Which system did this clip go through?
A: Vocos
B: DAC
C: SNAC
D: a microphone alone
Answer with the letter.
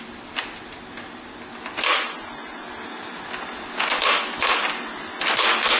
D